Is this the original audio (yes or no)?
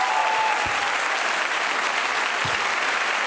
yes